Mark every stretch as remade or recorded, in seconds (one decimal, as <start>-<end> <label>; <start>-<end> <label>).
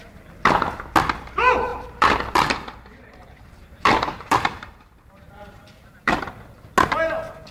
0.0-1.7 recorded; 1.7-6.2 remade; 6.2-7.5 recorded